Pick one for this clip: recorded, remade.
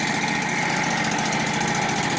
recorded